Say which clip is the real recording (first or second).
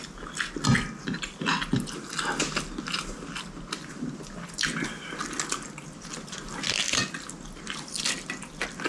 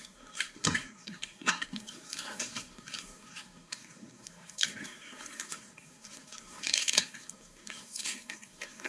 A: first